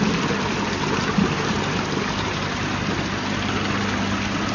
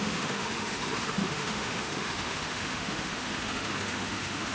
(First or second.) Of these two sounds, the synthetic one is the second